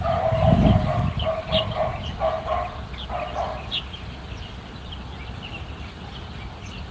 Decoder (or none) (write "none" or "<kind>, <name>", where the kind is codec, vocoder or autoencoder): vocoder, BigVGAN v2